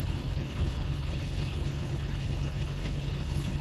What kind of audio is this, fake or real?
fake